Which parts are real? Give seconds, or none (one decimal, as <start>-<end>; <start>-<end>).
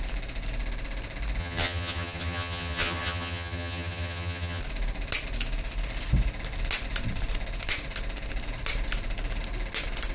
0.0-1.4; 4.6-10.1